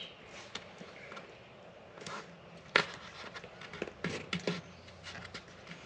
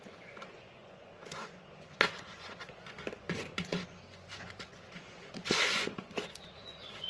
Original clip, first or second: first